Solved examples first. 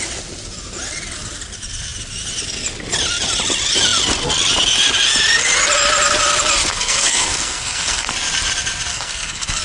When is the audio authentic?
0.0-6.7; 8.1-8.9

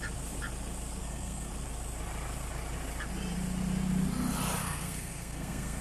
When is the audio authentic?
0.0-1.0; 1.5-4.6

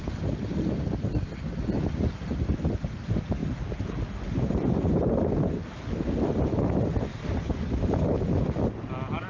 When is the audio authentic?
0.0-9.3